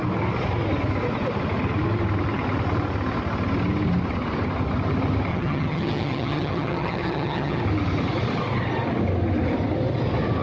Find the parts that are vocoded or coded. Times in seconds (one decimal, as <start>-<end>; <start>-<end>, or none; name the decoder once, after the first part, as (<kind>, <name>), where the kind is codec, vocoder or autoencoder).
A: 5.3-7.6 (vocoder, HiFi-GAN)